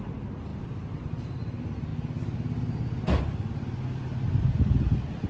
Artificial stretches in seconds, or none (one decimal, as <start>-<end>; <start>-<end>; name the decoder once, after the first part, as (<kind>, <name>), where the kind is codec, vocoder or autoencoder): 0.5-1.1 (vocoder, BigVGAN v2)